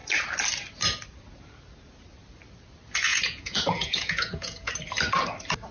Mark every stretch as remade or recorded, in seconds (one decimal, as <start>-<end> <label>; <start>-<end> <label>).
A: 0.0-3.1 recorded; 3.1-4.7 remade; 4.7-5.7 recorded